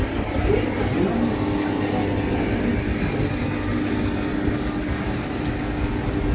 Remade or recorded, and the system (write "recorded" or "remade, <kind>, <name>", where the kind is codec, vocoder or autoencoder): recorded